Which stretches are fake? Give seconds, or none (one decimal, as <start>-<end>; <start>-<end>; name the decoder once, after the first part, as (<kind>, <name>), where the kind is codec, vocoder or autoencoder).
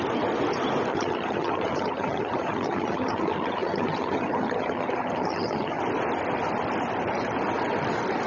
0.9-5.8 (vocoder, HiFi-GAN)